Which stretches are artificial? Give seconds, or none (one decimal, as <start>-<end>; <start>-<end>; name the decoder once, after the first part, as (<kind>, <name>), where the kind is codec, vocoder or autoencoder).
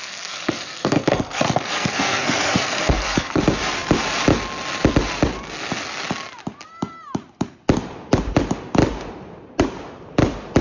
0.0-3.4 (codec, SNAC)